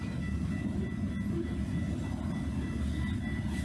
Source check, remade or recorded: recorded